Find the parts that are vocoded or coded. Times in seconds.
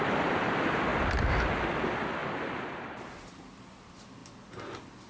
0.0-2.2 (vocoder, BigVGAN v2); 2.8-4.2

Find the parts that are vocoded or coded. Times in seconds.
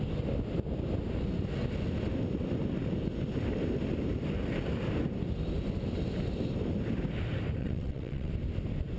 7.6-8.3 (vocoder, WaveNeXt)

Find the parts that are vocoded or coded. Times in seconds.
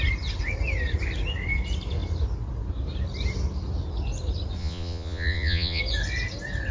4.6-5.8 (vocoder, Vocos)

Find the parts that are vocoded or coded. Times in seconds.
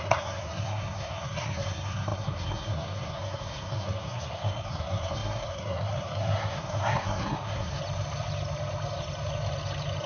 0.0-7.8 (codec, SNAC)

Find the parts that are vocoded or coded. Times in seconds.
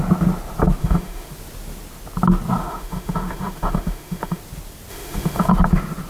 0.8-1.3 (autoencoder, DAC-VAE); 2.6-4.4; 4.9-5.5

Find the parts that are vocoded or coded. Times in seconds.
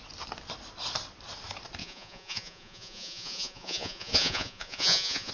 1.8-5.3 (vocoder, Vocos)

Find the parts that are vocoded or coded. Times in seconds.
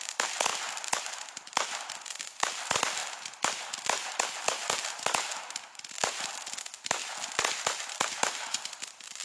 none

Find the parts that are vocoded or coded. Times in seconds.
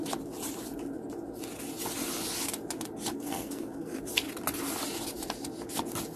3.1-4.0 (codec, SNAC)